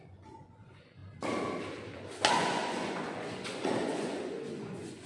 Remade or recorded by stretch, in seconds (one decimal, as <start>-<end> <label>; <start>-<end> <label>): 0.0-1.0 remade; 1.0-2.3 recorded; 2.3-5.1 remade